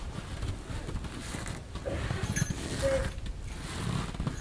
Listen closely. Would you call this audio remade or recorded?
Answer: recorded